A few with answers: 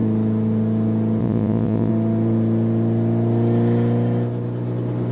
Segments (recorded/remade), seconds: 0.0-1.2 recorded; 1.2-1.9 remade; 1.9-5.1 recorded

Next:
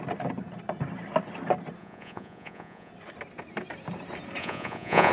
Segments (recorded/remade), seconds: 0.0-1.8 recorded; 1.8-2.9 remade; 2.9-4.4 recorded; 4.4-5.1 remade

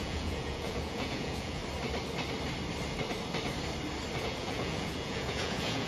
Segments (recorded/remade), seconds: 0.0-1.6 remade; 1.6-4.2 recorded; 4.2-5.9 remade

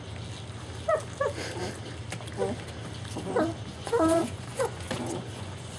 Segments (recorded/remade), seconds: 0.0-3.7 recorded; 3.7-5.8 remade

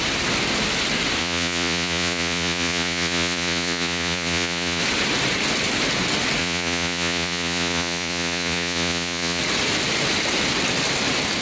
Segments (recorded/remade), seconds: 0.0-1.2 recorded; 1.2-4.8 remade; 4.8-6.4 recorded; 6.4-9.4 remade; 9.4-11.4 recorded